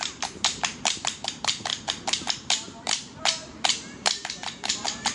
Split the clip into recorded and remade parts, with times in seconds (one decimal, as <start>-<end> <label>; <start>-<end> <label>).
0.0-5.1 remade